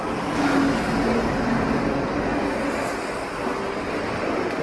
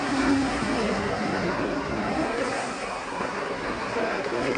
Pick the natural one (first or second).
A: first